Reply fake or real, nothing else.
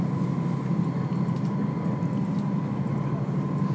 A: real